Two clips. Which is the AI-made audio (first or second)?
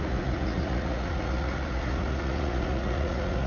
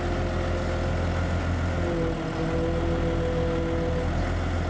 first